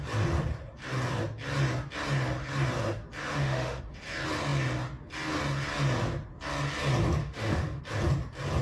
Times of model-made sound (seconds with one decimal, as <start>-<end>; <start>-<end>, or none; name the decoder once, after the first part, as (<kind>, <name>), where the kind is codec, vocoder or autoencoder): 3.2-3.8 (autoencoder, DAC-VAE); 7.2-7.8